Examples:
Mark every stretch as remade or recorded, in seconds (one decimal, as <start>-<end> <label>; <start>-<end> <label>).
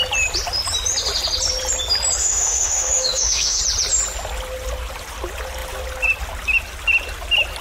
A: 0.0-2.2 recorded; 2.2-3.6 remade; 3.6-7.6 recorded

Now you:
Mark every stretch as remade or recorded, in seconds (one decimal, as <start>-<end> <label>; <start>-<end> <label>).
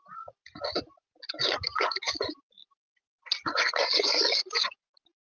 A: 0.0-5.2 recorded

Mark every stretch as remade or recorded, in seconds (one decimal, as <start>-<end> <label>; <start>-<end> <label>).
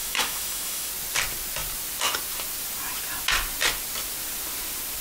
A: 0.0-0.9 remade; 0.9-5.0 recorded